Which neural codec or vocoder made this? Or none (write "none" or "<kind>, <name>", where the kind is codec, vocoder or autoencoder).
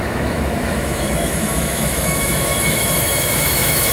autoencoder, DAC-VAE